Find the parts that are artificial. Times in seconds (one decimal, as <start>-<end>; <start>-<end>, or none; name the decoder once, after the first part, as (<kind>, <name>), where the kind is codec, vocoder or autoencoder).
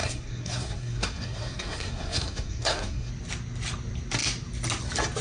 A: 0.0-3.1 (codec, SNAC)